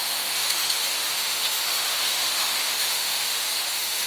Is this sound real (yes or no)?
no